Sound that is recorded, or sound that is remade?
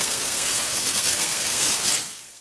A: remade